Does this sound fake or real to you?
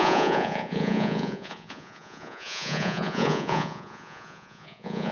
fake